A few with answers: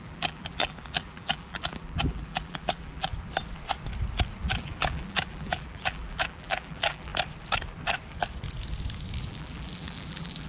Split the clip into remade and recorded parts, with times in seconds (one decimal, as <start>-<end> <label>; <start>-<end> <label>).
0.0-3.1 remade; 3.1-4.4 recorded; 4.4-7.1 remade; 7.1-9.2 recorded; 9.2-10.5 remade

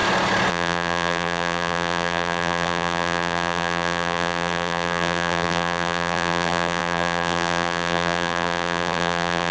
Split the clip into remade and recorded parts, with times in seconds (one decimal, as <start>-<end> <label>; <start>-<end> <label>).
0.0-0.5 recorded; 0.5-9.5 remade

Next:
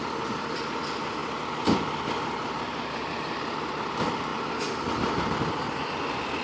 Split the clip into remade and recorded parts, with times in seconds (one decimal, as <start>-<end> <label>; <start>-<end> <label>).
0.0-1.2 remade; 1.2-3.6 recorded; 3.6-6.4 remade

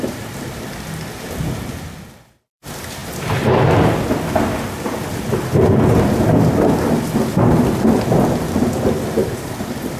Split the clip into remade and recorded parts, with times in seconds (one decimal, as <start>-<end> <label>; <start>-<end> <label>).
0.0-9.2 recorded; 9.2-10.0 remade

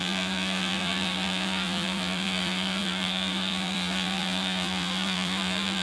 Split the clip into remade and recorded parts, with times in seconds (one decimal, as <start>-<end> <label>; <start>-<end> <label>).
0.0-5.8 remade

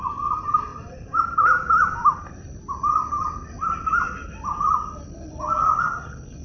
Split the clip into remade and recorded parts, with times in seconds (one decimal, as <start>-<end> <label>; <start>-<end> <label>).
0.0-0.7 recorded; 0.7-2.2 remade; 2.2-6.4 recorded

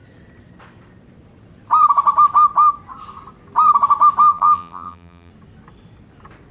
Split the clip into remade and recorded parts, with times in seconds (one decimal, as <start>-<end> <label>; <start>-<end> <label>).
0.0-4.3 recorded; 4.3-5.3 remade; 5.3-6.5 recorded